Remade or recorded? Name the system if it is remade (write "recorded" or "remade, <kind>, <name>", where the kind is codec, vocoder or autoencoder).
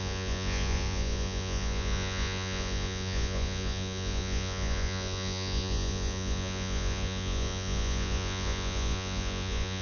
remade, vocoder, Vocos